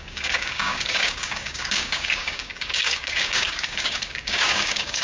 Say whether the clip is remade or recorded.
remade